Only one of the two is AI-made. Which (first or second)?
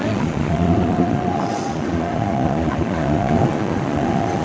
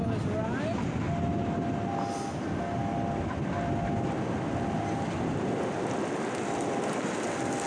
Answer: first